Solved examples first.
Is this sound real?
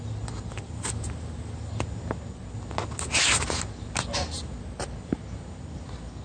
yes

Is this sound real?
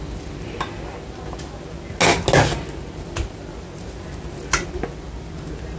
yes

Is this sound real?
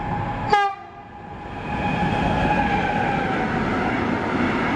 yes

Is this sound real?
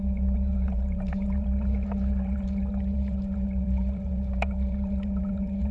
no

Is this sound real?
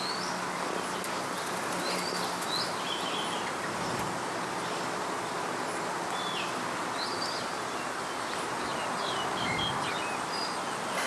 yes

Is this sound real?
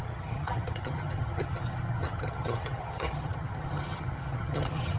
no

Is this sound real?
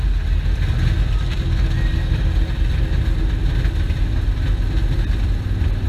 yes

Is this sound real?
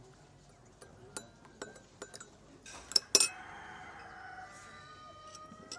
yes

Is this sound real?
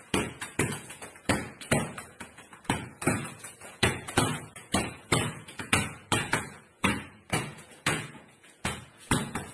no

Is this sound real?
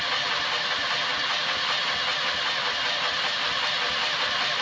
yes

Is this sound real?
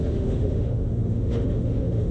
no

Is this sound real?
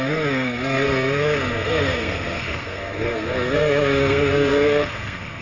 no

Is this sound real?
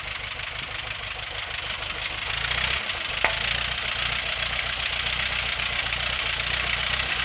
yes